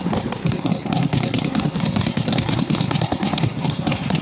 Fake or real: fake